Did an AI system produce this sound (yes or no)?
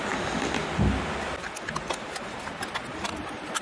no